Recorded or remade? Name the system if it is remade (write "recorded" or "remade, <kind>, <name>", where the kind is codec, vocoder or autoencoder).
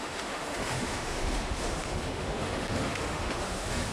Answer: remade, autoencoder, DAC-VAE